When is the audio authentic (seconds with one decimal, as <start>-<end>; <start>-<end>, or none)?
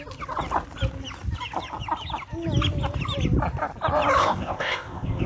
0.0-4.2